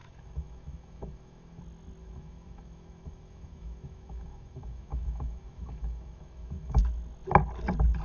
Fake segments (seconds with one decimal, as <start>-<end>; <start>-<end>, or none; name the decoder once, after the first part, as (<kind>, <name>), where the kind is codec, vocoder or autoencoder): 0.0-1.6 (autoencoder, DAC-VAE); 2.0-6.8